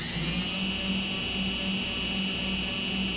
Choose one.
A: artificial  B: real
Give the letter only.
B